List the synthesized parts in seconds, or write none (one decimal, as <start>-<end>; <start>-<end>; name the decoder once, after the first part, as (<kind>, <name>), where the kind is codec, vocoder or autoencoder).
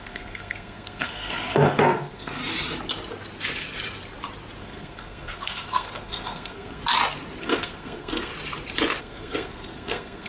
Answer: 0.0-2.4 (codec, SNAC); 4.6-6.8; 7.4-8.3; 9.0-10.3